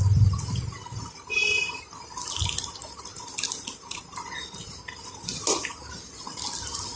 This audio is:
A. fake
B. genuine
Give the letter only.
B